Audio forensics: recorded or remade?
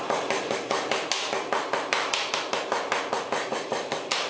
recorded